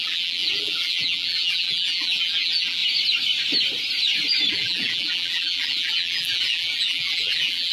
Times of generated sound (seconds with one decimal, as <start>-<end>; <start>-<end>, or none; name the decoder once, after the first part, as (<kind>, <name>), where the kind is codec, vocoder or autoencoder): 0.0-2.8 (vocoder, BigVGAN v2); 4.5-7.7